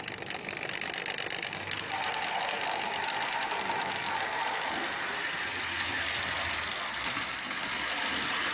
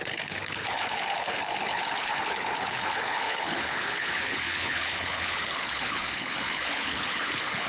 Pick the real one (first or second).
first